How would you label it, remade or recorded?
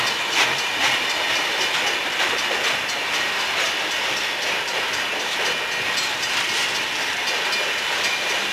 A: recorded